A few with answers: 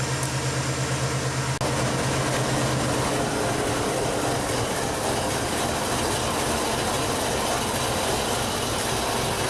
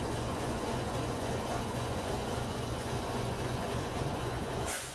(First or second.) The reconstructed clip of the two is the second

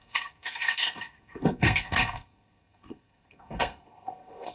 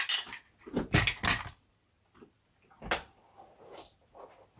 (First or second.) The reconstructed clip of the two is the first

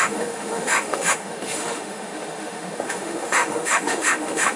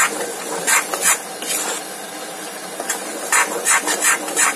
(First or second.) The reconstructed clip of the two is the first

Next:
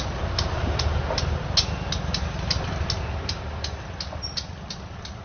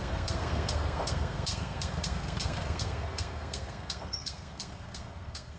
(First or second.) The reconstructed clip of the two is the second